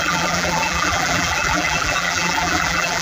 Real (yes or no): no